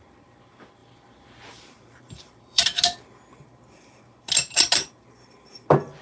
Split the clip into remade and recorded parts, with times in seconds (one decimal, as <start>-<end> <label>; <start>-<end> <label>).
0.0-0.8 recorded; 0.8-2.6 remade; 2.6-6.0 recorded